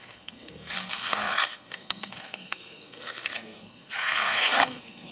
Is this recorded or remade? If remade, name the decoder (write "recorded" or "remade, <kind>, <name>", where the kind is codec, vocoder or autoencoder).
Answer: remade, codec, SNAC